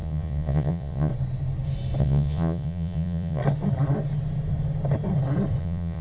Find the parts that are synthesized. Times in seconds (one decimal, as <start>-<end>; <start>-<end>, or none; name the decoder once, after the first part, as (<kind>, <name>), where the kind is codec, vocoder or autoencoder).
0.0-1.1 (vocoder, Vocos); 2.0-3.4; 5.6-6.0